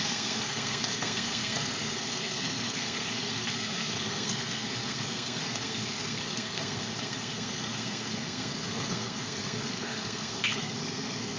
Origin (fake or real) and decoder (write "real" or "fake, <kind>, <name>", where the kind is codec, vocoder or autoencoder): fake, codec, SNAC